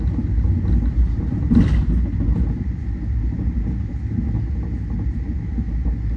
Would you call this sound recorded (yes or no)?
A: yes